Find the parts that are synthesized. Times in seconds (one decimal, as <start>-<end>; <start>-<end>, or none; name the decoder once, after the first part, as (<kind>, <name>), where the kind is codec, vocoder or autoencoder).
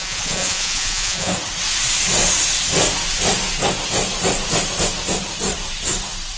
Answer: 0.0-1.3 (vocoder, Vocos)